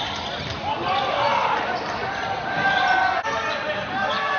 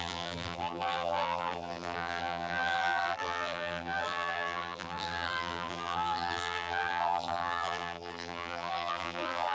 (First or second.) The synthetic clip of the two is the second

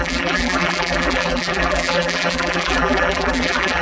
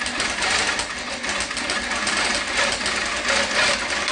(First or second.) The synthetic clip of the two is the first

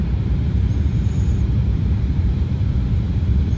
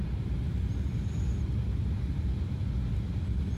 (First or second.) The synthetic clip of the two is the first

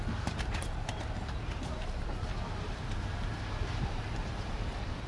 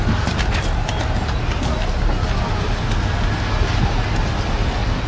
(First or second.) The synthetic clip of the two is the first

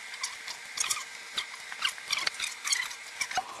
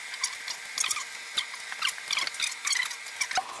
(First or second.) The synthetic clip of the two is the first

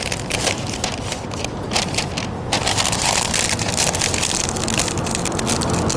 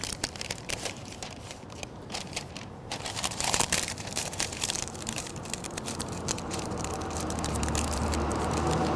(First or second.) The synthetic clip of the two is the second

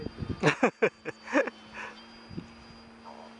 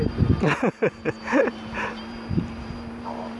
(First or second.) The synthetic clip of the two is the second